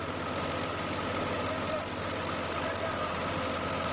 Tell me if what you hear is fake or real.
real